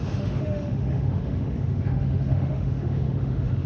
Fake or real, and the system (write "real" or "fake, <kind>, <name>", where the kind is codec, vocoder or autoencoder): fake, autoencoder, DAC-VAE